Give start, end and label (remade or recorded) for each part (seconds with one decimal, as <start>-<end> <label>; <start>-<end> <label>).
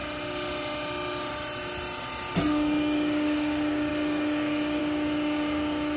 0.0-2.5 recorded; 2.5-6.0 remade